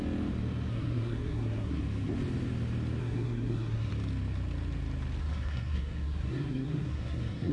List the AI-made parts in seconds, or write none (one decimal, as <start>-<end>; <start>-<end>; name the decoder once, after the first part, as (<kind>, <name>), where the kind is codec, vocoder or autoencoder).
0.7-1.8 (codec, SNAC); 3.0-3.9; 5.2-7.5